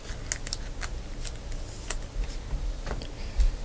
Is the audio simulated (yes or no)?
no